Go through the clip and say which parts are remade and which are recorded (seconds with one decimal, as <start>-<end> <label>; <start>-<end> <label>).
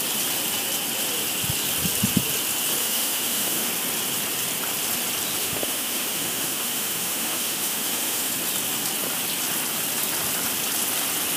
0.0-2.8 recorded; 2.8-3.7 remade; 3.7-5.4 recorded; 5.4-8.3 remade; 8.3-11.4 recorded